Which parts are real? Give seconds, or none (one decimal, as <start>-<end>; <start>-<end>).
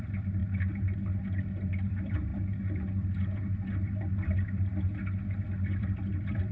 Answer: 0.4-1.8; 2.3-5.8